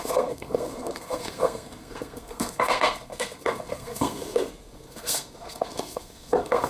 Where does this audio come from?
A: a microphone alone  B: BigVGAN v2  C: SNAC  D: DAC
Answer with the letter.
C